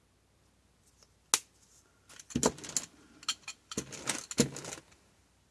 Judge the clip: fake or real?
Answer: real